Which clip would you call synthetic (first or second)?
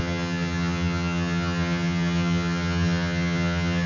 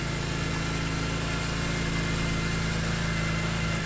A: first